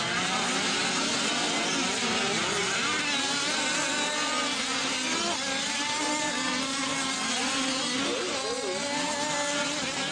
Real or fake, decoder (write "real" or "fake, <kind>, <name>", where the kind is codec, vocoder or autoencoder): real